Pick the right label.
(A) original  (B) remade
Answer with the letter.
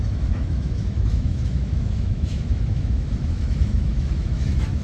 B